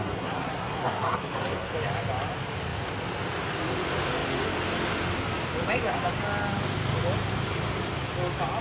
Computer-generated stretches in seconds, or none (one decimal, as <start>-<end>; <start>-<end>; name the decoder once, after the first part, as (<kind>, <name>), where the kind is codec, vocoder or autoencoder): 0.0-1.7 (codec, SNAC)